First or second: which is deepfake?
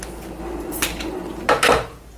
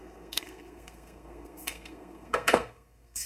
second